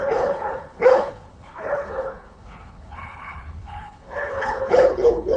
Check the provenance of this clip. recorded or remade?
remade